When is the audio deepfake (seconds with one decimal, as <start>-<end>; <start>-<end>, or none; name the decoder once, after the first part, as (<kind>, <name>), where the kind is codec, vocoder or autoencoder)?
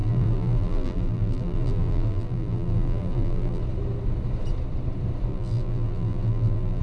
0.0-3.6 (vocoder, BigVGAN v2); 5.3-6.8